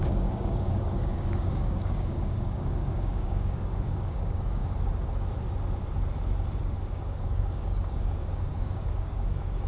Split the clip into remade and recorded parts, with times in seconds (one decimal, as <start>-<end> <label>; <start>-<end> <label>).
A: 0.0-4.6 remade; 4.6-6.6 recorded; 6.6-9.7 remade